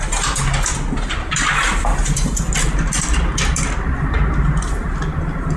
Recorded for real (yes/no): yes